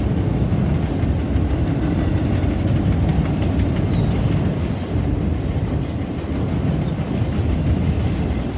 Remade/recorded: recorded